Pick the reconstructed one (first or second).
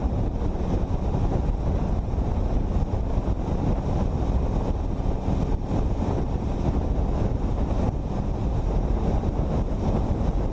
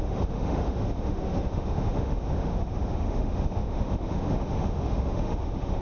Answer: second